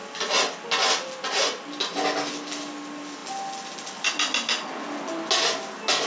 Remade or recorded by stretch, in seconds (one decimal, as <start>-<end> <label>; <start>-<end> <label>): 0.0-6.1 recorded